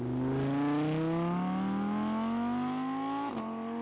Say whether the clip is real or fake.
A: real